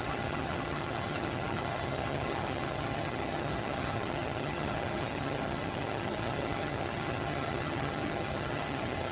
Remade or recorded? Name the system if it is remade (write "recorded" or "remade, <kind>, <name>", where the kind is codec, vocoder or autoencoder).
remade, vocoder, HiFi-GAN